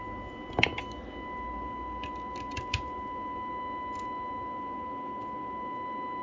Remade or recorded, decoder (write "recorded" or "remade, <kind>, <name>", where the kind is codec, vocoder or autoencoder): recorded